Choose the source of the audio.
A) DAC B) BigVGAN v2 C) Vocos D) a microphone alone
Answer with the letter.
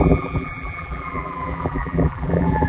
B